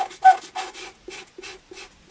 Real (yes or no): yes